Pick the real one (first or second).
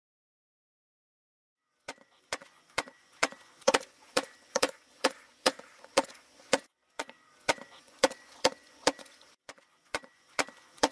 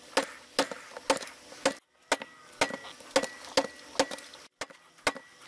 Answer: second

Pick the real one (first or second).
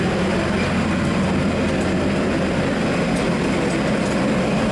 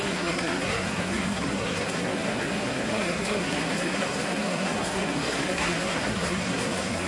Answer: first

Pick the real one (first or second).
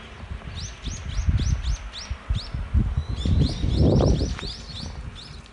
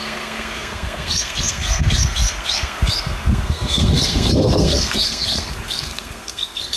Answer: first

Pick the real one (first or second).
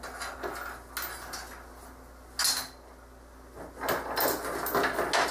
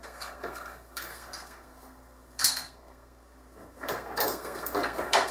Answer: first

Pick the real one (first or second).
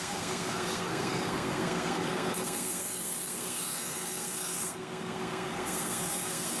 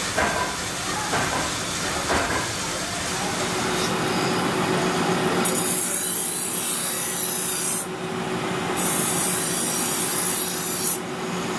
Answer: second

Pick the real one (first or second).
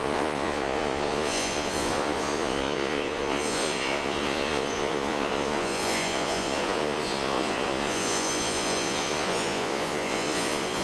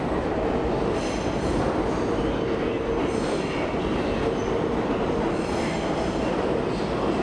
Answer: second